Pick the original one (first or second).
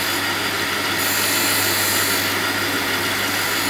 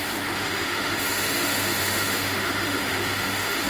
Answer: first